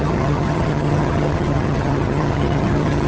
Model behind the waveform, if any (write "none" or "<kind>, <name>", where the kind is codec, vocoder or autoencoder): vocoder, HiFi-GAN